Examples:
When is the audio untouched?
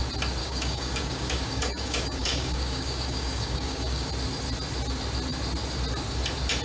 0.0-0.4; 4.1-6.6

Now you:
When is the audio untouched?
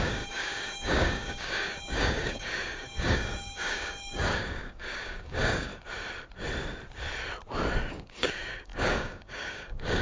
5.7-7.9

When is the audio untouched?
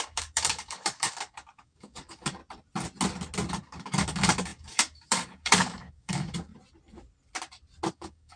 2.4-3.5; 6.5-7.9